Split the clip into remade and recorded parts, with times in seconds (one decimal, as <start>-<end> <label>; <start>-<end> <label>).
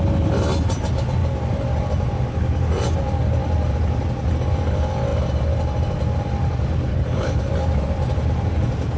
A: 0.0-6.9 recorded; 6.9-7.5 remade; 7.5-9.0 recorded